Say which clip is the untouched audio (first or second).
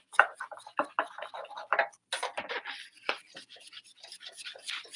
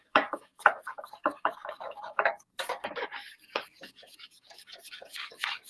first